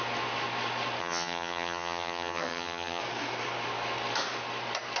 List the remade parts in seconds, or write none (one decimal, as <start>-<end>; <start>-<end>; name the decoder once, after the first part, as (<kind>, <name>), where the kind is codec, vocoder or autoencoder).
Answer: 1.0-3.0 (vocoder, HiFi-GAN)